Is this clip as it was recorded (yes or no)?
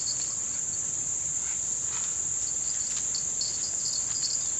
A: yes